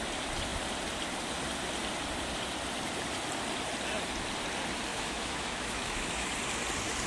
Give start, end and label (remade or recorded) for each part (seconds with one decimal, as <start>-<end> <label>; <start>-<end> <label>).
0.0-4.9 recorded; 4.9-6.3 remade; 6.3-7.1 recorded